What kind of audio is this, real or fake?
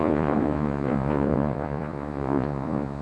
fake